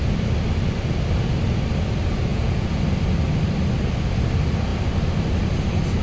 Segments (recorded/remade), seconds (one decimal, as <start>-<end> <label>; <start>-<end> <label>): 0.0-2.3 recorded; 2.3-2.8 remade; 2.8-6.0 recorded